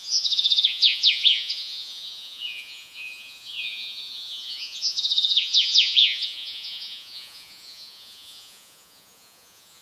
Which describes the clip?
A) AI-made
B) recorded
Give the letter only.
A